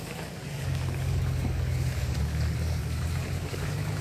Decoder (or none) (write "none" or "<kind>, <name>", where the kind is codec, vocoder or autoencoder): codec, DAC